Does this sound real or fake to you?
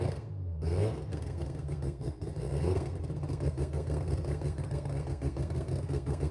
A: fake